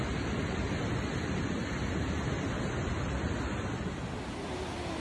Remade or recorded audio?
recorded